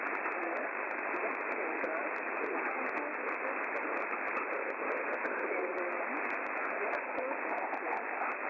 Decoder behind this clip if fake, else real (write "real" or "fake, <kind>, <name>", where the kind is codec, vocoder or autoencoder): real